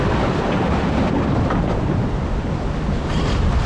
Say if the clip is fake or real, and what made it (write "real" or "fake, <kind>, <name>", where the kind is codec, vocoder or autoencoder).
real